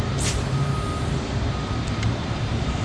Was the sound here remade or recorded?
remade